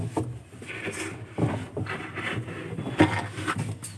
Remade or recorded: recorded